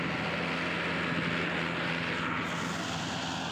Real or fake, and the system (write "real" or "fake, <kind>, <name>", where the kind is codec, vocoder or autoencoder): real